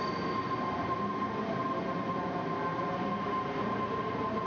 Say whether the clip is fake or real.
real